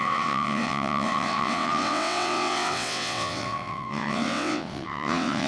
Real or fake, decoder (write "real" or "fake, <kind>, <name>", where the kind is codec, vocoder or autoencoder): fake, vocoder, WaveNeXt